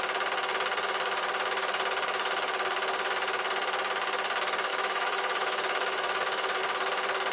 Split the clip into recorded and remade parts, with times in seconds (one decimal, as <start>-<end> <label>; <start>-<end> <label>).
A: 0.0-4.7 recorded; 4.7-6.6 remade; 6.6-7.3 recorded